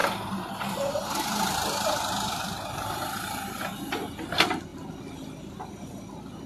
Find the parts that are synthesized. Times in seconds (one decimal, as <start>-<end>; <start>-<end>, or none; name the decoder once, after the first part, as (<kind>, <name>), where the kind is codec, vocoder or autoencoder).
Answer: 0.0-3.9 (vocoder, BigVGAN v2)